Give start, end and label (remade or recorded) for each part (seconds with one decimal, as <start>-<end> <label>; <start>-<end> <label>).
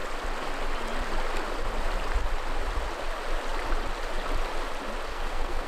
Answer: 0.0-5.1 recorded; 5.1-5.7 remade